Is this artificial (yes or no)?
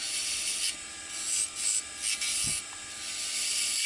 no